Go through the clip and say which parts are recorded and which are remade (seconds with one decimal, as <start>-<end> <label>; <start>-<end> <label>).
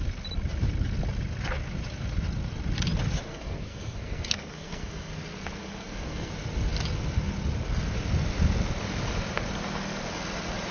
0.0-3.3 recorded; 3.3-5.1 remade; 5.1-5.6 recorded; 5.6-6.3 remade; 6.3-10.7 recorded